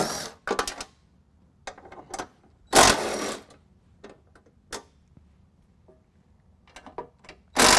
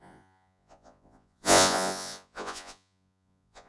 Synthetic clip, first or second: second